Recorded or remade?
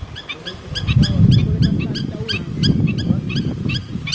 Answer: recorded